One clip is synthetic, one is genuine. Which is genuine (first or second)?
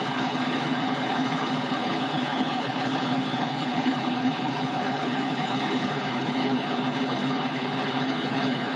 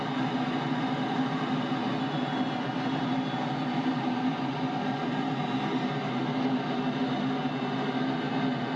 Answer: second